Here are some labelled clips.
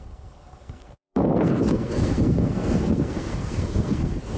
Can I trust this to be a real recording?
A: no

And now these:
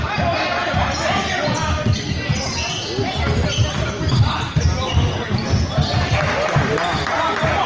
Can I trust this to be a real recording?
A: yes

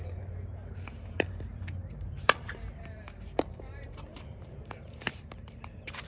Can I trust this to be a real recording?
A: no